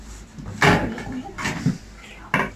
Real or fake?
real